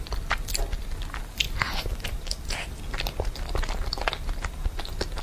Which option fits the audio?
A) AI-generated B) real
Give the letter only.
B